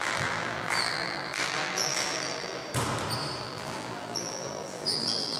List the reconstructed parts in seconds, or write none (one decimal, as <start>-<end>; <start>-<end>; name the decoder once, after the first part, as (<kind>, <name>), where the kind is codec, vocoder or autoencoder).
0.0-2.6 (vocoder, BigVGAN v2); 3.4-5.4